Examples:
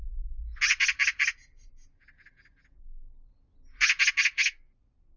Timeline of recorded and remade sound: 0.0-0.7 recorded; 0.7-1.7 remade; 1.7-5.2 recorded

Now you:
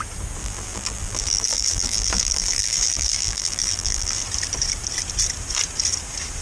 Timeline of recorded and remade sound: 0.0-0.4 recorded; 0.4-4.2 remade; 4.2-6.4 recorded

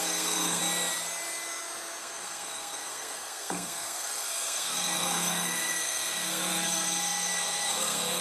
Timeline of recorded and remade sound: 0.0-0.6 remade; 0.6-2.0 recorded; 2.0-8.2 remade